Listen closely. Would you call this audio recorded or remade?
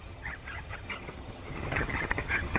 remade